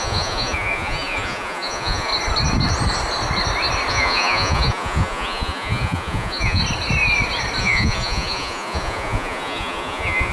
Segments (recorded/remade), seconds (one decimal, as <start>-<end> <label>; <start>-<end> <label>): 0.0-2.1 remade; 2.1-3.9 recorded; 3.9-6.6 remade; 6.6-7.6 recorded; 7.6-10.3 remade